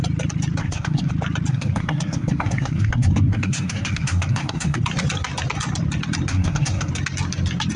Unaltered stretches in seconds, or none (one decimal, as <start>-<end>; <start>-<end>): 0.0-0.6; 1.1-1.5; 4.8-6.3; 6.9-7.8